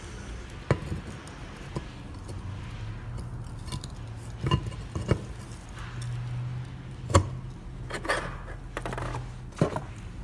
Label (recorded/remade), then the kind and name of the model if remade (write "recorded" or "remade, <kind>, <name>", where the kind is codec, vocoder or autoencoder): recorded